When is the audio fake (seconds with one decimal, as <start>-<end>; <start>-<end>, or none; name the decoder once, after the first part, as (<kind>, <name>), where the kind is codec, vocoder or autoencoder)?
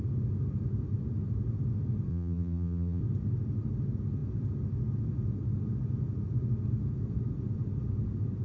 2.1-3.0 (vocoder, BigVGAN v2)